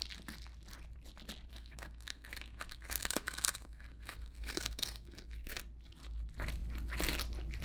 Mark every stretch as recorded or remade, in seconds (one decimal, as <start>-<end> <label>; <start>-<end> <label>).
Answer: 0.0-1.5 recorded; 1.5-5.6 remade; 5.6-7.6 recorded